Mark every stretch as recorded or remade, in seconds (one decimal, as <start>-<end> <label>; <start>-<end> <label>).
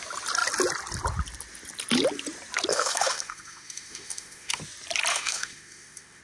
0.0-2.7 recorded; 2.7-4.6 remade; 4.6-5.1 recorded; 5.1-6.2 remade